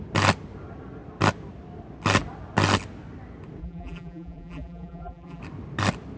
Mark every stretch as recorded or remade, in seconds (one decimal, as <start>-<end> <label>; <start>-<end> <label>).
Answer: 0.0-3.6 recorded; 3.6-5.4 remade; 5.4-6.2 recorded

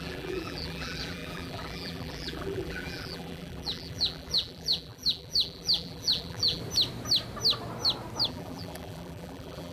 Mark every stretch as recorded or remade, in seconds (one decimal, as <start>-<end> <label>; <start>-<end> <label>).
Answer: 0.0-6.6 remade; 6.6-8.3 recorded; 8.3-9.7 remade

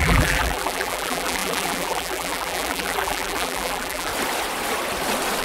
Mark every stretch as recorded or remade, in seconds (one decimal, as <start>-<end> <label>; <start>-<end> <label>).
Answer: 0.0-4.1 remade; 4.1-5.4 recorded

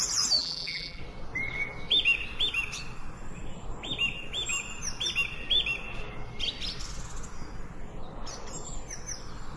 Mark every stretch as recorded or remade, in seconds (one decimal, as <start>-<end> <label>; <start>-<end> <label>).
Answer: 0.0-0.4 recorded; 0.4-1.0 remade; 1.0-9.6 recorded

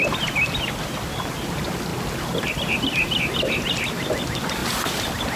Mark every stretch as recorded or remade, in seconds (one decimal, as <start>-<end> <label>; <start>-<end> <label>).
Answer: 0.0-1.1 remade; 1.1-4.6 recorded; 4.6-5.4 remade

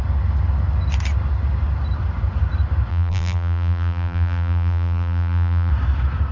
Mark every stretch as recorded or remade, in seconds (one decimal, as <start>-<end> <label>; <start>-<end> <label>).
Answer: 0.0-2.9 recorded; 2.9-5.7 remade; 5.7-6.3 recorded

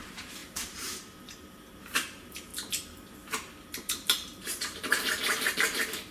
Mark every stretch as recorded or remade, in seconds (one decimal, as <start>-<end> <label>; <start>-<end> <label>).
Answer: 0.0-2.5 remade; 2.5-3.6 recorded; 3.6-6.1 remade

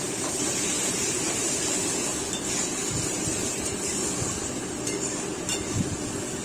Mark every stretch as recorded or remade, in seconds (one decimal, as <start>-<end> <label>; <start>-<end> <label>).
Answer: 0.0-2.1 remade; 2.1-2.9 recorded; 2.9-3.9 remade; 3.9-6.4 recorded